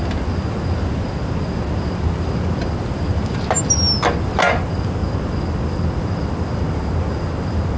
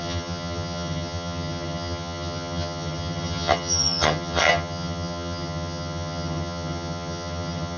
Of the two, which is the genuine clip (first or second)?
first